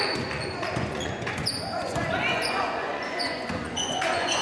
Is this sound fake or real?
fake